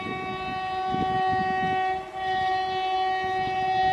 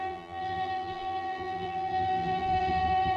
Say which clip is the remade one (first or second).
second